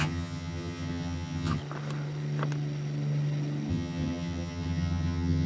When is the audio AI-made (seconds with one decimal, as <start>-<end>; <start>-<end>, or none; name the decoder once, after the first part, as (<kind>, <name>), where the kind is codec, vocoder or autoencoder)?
0.0-1.6 (vocoder, HiFi-GAN); 3.7-5.5